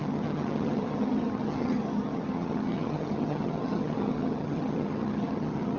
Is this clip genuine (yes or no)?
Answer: no